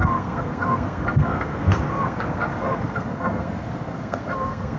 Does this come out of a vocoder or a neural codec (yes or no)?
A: yes